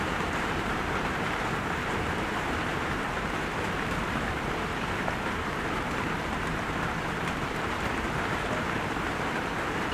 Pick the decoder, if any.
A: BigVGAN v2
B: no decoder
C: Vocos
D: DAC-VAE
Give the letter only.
A